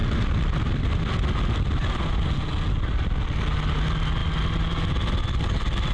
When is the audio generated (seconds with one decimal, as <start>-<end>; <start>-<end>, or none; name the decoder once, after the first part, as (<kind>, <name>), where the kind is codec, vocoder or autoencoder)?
0.0-1.0 (vocoder, BigVGAN v2)